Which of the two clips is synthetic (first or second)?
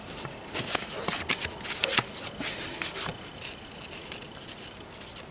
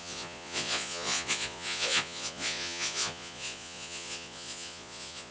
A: second